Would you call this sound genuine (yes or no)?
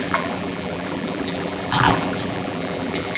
no